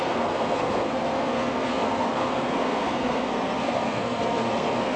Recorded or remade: remade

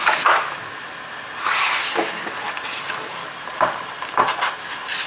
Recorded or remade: recorded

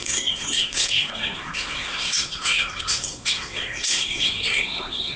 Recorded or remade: remade